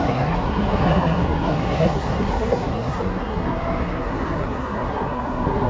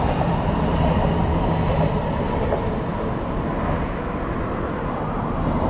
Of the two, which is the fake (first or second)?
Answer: first